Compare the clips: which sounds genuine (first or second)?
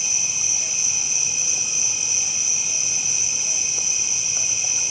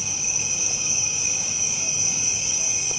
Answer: first